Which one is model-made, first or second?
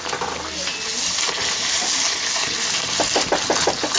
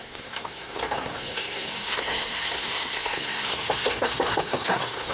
second